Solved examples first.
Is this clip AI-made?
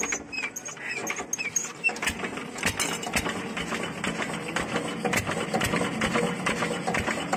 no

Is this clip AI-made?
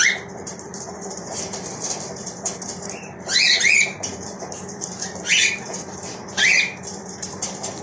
yes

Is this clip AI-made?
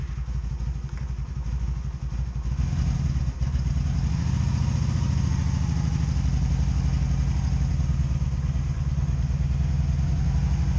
no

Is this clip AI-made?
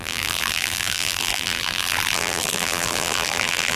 yes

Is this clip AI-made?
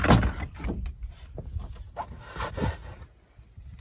no